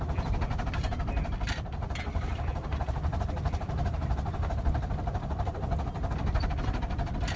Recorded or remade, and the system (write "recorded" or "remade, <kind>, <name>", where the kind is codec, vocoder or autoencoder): remade, vocoder, BigVGAN v2